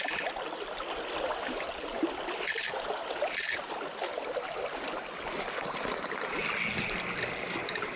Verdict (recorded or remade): recorded